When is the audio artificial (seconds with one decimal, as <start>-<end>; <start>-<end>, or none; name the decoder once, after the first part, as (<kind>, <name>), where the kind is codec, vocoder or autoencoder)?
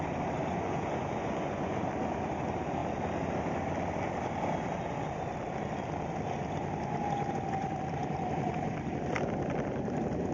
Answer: 0.4-1.8 (vocoder, Vocos)